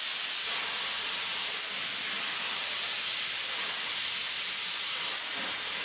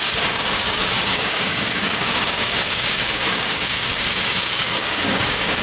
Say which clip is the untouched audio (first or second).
first